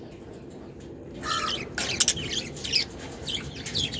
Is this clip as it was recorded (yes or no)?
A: yes